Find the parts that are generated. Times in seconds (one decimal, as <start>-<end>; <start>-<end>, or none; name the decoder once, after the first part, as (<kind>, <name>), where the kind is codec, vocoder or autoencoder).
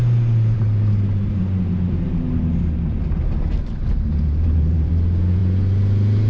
3.6-4.9 (vocoder, BigVGAN v2)